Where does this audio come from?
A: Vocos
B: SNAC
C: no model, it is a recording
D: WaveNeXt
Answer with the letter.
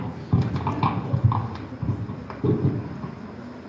C